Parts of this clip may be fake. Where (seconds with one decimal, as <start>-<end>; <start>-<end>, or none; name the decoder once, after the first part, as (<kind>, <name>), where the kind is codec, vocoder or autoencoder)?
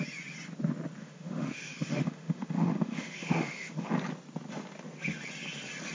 1.0-3.9 (autoencoder, DAC-VAE)